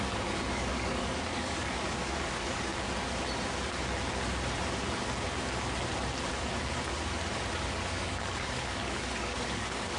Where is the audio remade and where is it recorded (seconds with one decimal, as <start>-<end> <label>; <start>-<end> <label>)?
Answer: 0.0-2.7 remade; 2.7-7.7 recorded; 7.7-10.0 remade